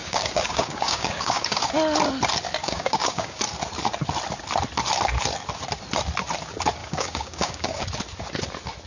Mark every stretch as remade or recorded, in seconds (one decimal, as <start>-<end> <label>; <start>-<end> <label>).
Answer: 0.0-1.7 remade; 1.7-2.6 recorded; 2.6-3.4 remade; 3.4-6.8 recorded; 6.8-7.8 remade; 7.8-8.9 recorded